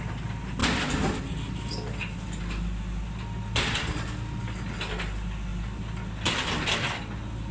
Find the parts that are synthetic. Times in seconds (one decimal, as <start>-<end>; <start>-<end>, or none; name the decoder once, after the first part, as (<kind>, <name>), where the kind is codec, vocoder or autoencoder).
none